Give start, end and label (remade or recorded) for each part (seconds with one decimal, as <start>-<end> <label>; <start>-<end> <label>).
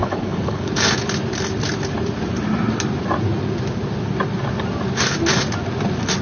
0.0-0.7 remade; 0.7-6.2 recorded